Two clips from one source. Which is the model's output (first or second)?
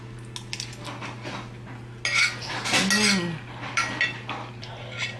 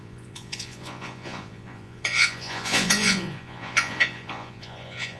second